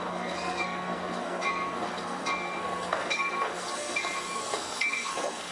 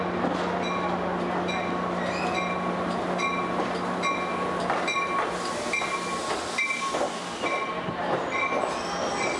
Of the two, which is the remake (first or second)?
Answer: first